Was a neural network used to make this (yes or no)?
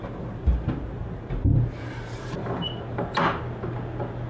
no